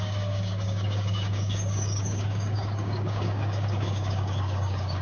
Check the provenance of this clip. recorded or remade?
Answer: remade